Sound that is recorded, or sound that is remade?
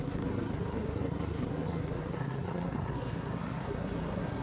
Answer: remade